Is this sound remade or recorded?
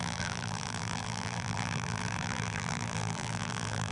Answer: remade